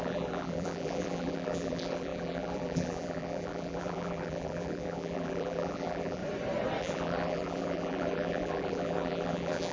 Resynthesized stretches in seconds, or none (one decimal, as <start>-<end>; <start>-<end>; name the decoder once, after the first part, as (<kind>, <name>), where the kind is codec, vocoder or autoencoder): 0.0-6.2 (vocoder, BigVGAN v2); 6.8-9.7